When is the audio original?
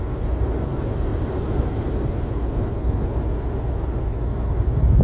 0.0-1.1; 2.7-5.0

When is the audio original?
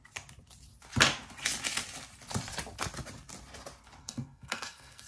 0.0-4.0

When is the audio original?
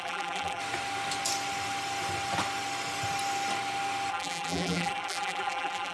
0.6-4.1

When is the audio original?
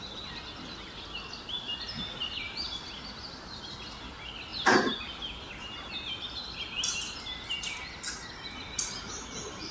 0.0-9.7